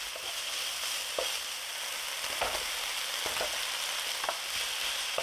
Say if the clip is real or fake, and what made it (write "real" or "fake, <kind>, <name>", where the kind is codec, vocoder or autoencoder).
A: real